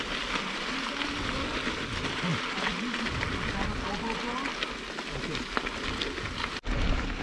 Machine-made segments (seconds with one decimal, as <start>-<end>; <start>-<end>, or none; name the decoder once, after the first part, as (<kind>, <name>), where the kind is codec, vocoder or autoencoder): none